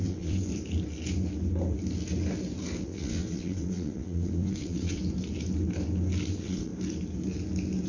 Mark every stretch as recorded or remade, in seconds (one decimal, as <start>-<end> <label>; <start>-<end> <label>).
0.0-0.5 remade; 0.5-2.8 recorded; 2.8-5.0 remade; 5.0-6.3 recorded; 6.3-6.7 remade; 6.7-7.9 recorded